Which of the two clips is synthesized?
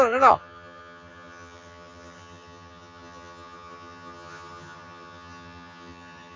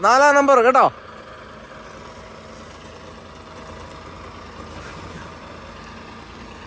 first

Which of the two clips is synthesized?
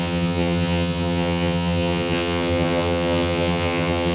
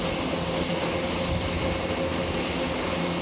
first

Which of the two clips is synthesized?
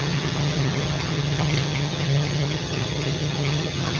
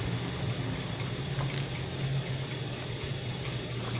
first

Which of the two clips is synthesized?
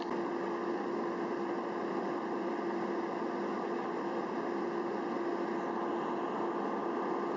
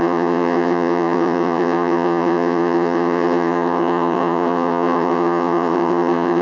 second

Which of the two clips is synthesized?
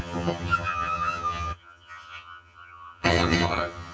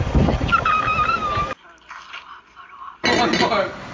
first